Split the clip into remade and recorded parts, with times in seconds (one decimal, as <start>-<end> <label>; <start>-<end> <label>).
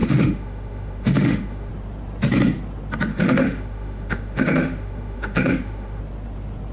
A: 0.0-1.7 remade; 1.7-3.1 recorded; 3.1-6.0 remade; 6.0-6.7 recorded